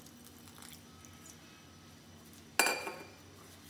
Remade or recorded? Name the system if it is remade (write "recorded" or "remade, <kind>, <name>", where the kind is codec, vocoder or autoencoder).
recorded